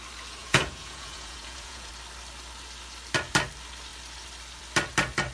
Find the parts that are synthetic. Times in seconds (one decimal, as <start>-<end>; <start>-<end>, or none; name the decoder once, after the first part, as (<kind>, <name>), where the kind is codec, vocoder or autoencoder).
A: 0.4-1.9 (vocoder, Vocos)